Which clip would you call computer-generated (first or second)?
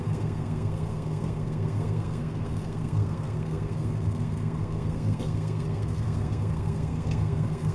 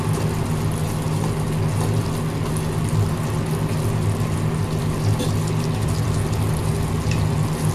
first